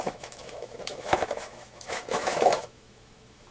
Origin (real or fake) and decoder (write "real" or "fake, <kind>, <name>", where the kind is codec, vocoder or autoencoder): fake, autoencoder, DAC-VAE